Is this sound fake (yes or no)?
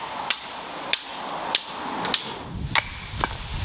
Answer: no